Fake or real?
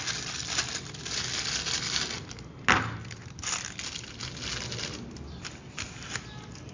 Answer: real